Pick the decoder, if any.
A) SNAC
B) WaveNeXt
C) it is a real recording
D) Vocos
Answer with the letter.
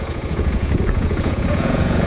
D